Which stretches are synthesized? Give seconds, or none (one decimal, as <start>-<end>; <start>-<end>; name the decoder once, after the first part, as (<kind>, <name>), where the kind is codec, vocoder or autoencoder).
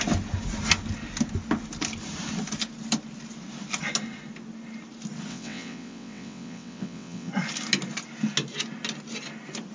5.3-7.3 (vocoder, WaveNeXt)